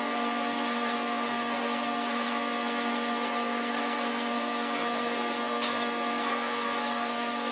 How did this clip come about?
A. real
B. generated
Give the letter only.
B